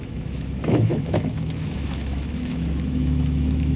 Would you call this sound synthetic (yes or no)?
yes